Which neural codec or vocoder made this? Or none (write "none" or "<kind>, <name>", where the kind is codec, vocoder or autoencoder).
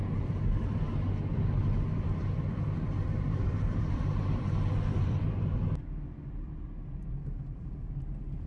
vocoder, BigVGAN v2